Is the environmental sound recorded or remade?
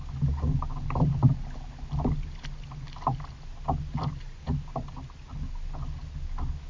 recorded